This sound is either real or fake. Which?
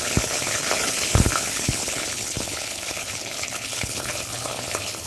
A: fake